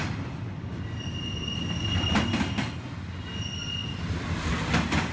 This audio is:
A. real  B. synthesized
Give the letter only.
A